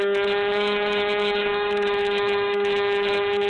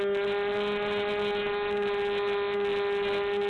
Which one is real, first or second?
second